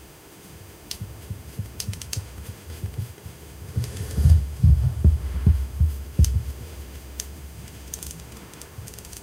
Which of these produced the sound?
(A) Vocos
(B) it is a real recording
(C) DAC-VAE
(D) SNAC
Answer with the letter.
C